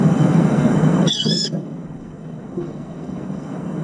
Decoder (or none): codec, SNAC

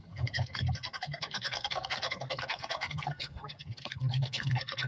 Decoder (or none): codec, SNAC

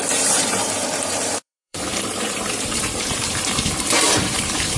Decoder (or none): vocoder, BigVGAN v2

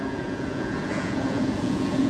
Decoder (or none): vocoder, Vocos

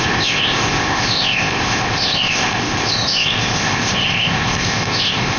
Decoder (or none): codec, ZipCodec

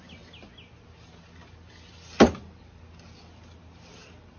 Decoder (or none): none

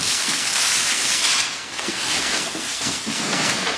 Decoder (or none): codec, SNAC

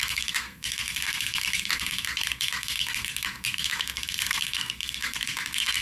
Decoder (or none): codec, SNAC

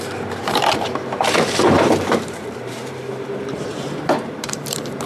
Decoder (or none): vocoder, BigVGAN v2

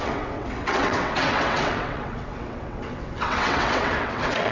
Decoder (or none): vocoder, WaveNeXt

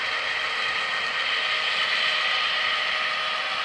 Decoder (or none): vocoder, BigVGAN v2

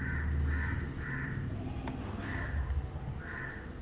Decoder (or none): none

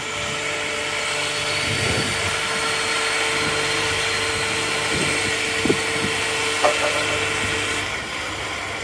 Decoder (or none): none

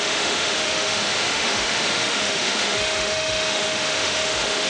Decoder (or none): autoencoder, DAC-VAE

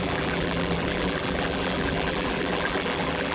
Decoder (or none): vocoder, BigVGAN v2